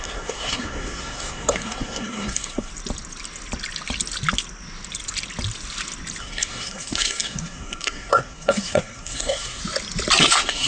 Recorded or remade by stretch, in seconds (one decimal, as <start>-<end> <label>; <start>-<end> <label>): 0.0-2.7 remade; 2.7-6.2 recorded; 6.2-9.6 remade; 9.6-10.2 recorded; 10.2-10.7 remade